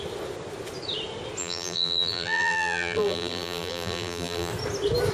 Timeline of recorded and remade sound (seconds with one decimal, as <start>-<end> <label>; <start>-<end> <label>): 0.0-1.4 recorded; 1.4-4.5 remade; 4.5-5.1 recorded